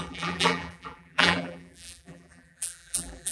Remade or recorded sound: remade